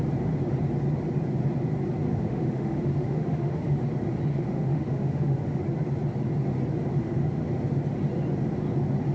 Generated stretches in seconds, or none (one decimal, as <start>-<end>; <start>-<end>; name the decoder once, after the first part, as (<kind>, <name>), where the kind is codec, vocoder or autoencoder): 2.1-3.8 (autoencoder, DAC-VAE); 4.3-5.6; 6.9-7.5